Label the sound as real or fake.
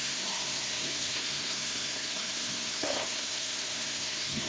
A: fake